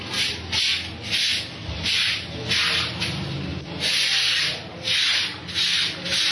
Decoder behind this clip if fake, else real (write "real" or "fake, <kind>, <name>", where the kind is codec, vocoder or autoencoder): real